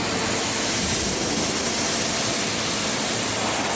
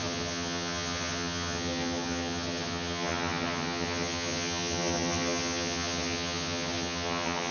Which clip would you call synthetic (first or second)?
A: second